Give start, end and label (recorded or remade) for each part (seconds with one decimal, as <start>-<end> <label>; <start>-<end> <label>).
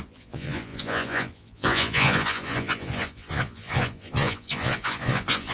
0.0-5.5 remade